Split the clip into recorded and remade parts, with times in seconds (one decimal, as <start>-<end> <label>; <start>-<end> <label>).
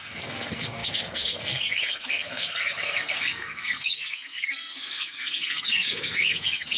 0.0-6.8 remade